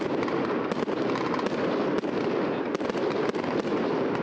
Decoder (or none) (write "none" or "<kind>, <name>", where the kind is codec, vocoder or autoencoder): none